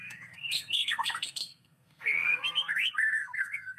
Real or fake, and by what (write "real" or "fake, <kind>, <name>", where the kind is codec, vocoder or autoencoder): fake, codec, SNAC